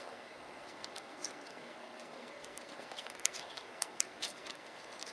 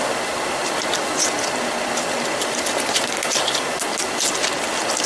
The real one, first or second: second